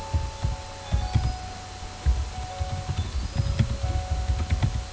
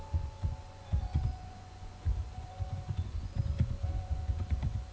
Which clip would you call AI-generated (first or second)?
second